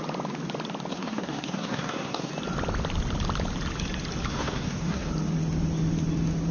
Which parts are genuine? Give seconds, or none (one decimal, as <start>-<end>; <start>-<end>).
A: 0.0-0.9; 2.3-4.3; 5.1-6.5